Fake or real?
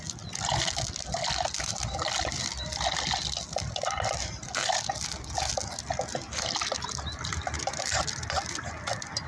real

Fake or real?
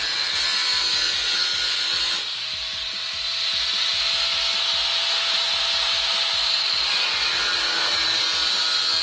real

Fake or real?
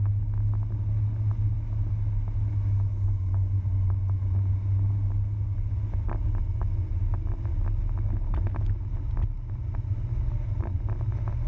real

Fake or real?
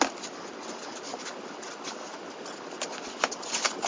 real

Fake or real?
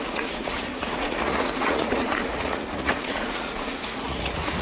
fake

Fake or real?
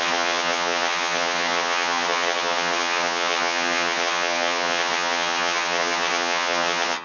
fake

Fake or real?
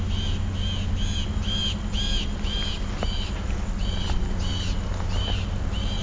real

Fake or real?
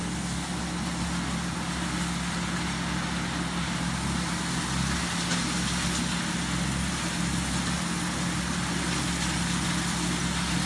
real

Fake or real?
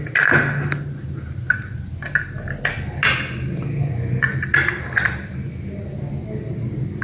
real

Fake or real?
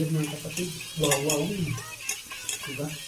real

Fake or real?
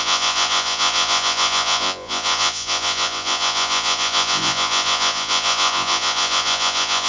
fake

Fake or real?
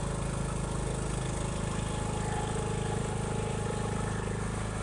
real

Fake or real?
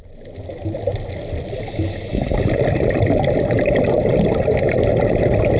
real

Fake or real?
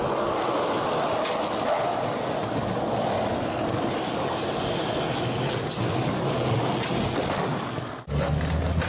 real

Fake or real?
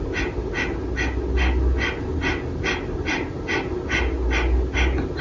real